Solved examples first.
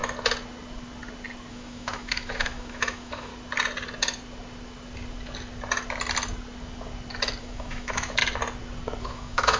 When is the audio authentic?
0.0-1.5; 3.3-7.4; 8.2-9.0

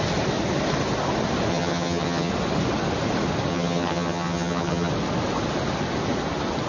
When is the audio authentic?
0.0-1.5; 2.3-3.5; 4.9-6.7

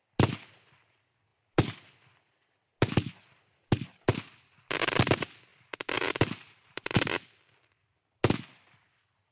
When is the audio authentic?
0.0-5.5; 7.2-9.3

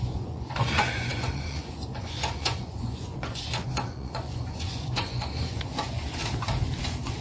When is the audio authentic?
6.2-6.8

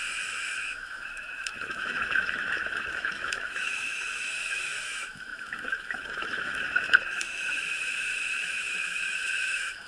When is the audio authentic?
none